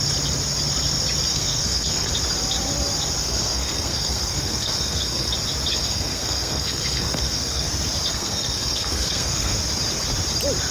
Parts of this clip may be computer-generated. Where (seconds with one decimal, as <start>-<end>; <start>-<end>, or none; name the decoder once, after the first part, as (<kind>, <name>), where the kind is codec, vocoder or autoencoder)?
1.3-2.1 (codec, SNAC); 3.2-5.3; 5.7-7.7; 8.1-9.6